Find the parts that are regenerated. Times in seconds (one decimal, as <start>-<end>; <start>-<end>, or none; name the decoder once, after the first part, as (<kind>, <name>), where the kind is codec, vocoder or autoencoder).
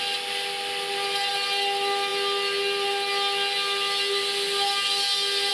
none